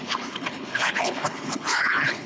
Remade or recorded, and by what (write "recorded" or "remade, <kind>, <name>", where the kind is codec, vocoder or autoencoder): remade, codec, HILCodec